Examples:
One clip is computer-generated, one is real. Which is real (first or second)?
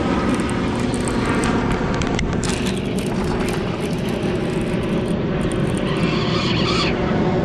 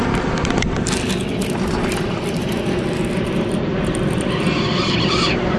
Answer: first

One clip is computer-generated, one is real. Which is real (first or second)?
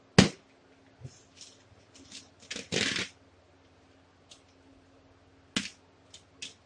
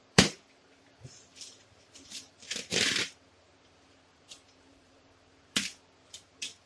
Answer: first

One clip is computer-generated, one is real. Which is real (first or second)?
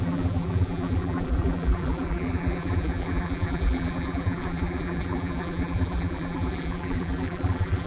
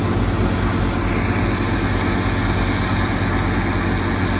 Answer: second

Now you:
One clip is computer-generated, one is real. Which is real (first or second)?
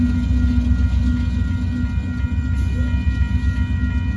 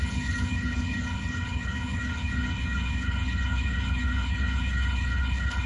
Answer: first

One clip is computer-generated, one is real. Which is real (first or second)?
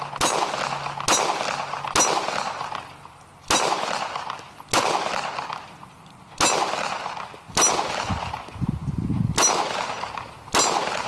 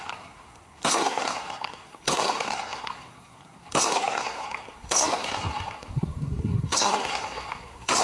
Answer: first